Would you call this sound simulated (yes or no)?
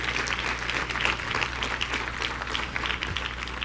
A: no